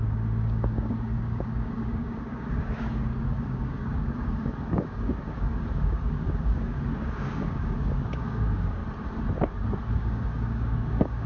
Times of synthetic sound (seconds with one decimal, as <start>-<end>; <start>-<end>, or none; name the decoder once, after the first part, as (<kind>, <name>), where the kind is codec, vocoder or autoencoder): 0.0-8.8 (codec, DAC); 9.9-11.3